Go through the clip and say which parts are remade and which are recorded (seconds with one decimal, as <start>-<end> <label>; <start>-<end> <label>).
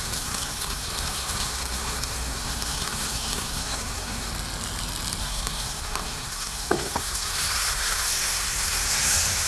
0.0-4.3 remade; 4.3-5.2 recorded; 5.2-9.5 remade